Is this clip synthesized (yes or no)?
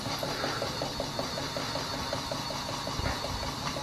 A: no